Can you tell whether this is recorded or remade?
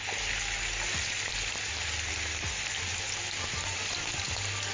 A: recorded